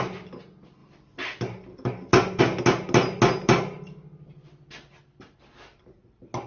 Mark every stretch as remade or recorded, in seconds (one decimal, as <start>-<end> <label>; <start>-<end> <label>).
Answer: 0.0-0.8 recorded; 0.8-2.4 remade; 2.4-6.5 recorded